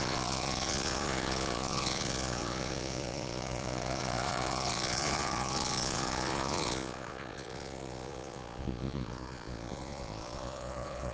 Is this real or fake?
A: fake